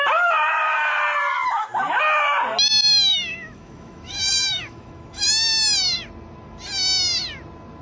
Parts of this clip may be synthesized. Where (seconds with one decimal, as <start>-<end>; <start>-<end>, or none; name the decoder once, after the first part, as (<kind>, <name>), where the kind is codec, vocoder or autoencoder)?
3.1-5.3 (autoencoder, DAC-VAE)